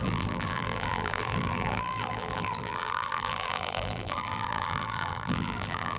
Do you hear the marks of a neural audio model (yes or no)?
yes